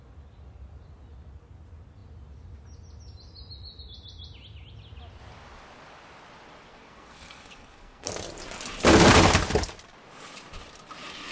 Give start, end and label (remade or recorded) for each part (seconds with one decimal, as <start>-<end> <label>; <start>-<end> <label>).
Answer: 0.0-6.7 recorded; 6.7-8.1 remade; 8.1-11.3 recorded